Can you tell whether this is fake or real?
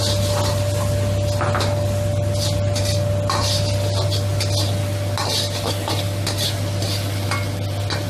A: real